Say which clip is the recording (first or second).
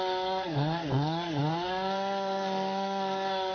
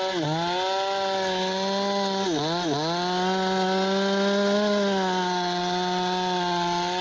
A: second